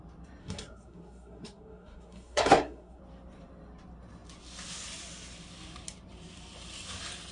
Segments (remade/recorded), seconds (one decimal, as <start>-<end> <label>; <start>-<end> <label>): 0.0-0.4 recorded; 0.4-3.0 remade; 3.0-7.3 recorded